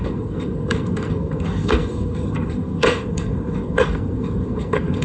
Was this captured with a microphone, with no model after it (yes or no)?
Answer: no